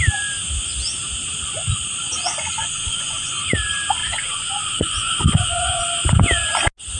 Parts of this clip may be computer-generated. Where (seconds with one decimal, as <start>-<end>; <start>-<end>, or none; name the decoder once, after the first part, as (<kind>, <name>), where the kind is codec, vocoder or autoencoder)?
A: 2.6-3.3 (vocoder, Vocos); 4.0-5.8